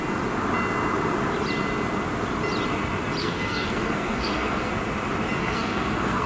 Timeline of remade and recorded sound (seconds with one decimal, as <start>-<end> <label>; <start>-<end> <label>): 0.0-3.2 recorded; 3.2-4.7 remade; 4.7-5.4 recorded; 5.4-6.3 remade